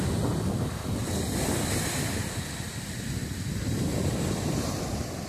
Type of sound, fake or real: real